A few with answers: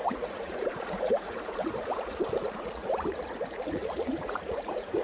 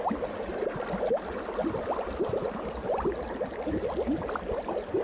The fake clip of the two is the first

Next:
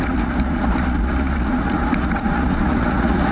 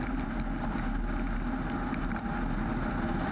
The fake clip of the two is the first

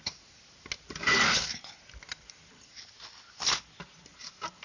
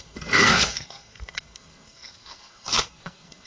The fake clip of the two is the second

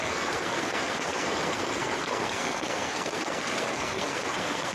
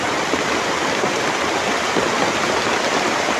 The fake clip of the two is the first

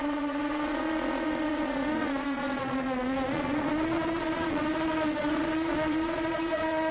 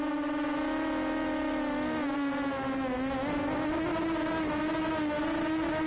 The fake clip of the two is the first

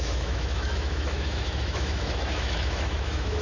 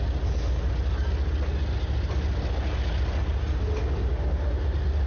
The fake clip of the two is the first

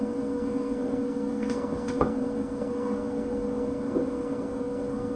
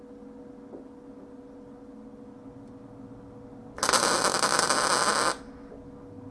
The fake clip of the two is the first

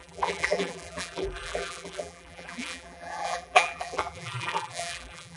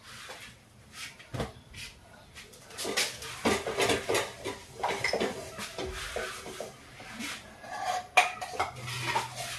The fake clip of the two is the first